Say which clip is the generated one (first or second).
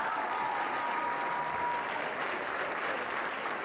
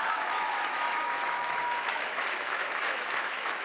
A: second